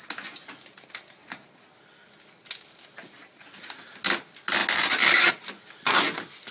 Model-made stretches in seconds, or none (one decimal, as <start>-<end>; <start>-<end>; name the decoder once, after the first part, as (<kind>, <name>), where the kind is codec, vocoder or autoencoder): none